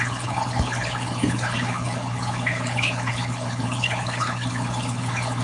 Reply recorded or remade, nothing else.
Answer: remade